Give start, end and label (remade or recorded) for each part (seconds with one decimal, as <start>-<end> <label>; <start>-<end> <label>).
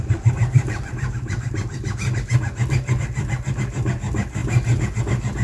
0.0-0.4 recorded; 0.4-1.5 remade; 1.5-4.4 recorded; 4.4-5.0 remade; 5.0-5.4 recorded